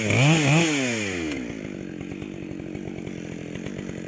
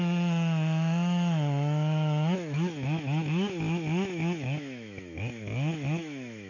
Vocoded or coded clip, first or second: second